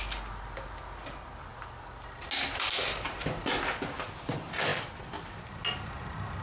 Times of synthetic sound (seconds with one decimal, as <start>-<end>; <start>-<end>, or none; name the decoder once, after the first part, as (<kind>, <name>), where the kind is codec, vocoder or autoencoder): none